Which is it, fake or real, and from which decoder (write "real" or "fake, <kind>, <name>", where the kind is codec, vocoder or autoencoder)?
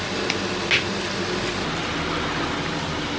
real